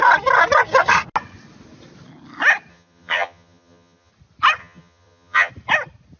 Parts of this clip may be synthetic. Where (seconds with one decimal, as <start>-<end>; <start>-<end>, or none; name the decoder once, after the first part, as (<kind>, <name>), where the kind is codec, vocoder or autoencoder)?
2.7-4.1 (vocoder, HiFi-GAN); 4.6-5.5